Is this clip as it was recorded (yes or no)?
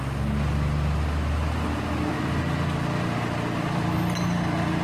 yes